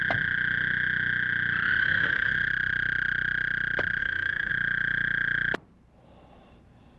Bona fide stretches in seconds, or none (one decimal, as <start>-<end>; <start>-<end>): 0.0-1.8; 2.3-4.0; 4.5-7.0